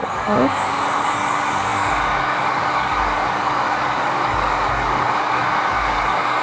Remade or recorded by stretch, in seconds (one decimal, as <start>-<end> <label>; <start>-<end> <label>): 0.0-6.4 remade